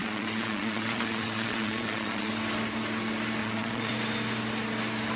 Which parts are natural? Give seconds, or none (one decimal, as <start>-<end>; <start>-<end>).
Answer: 2.3-3.4; 3.9-5.2